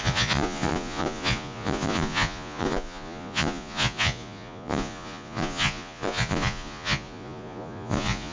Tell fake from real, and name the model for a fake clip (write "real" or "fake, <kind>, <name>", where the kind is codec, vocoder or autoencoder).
fake, vocoder, Vocos